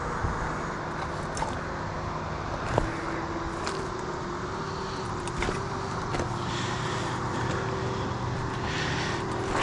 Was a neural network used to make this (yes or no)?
no